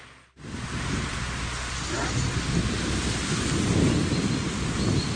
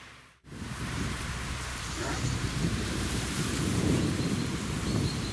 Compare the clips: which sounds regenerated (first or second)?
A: second